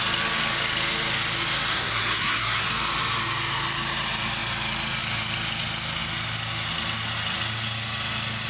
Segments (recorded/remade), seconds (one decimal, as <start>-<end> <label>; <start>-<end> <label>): 0.0-1.7 recorded; 1.7-2.7 remade; 2.7-8.5 recorded